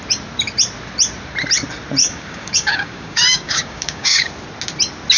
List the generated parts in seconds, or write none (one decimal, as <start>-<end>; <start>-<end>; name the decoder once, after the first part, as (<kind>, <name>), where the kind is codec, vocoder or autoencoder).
2.0-4.3 (codec, DAC)